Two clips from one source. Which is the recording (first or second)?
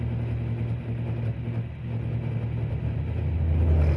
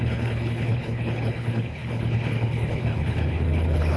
first